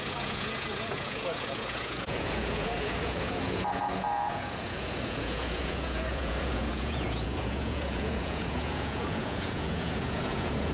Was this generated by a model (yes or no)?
yes